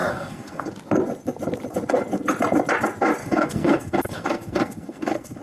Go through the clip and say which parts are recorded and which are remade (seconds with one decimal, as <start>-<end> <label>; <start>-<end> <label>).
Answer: 0.0-0.7 remade; 0.7-3.2 recorded; 3.2-5.4 remade